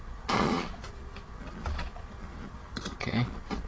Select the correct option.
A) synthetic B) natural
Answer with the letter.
A